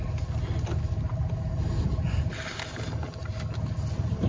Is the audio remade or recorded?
recorded